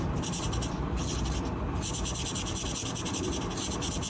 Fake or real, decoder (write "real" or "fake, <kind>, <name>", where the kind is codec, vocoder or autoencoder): real